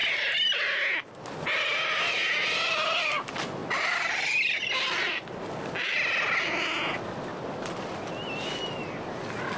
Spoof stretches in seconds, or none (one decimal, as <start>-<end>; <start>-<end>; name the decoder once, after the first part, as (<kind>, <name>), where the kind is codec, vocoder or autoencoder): none